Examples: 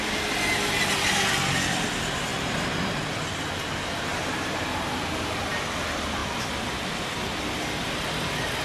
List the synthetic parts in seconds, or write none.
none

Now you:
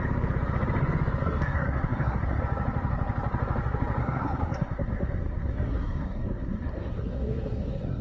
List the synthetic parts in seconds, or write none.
1.2-2.4; 4.0-8.0